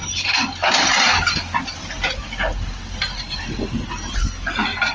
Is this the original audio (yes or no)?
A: yes